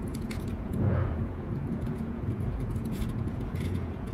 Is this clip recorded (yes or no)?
no